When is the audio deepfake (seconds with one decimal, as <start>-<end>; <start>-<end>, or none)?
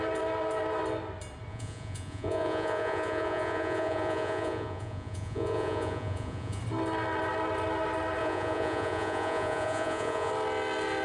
1.5-6.6; 8.2-10.3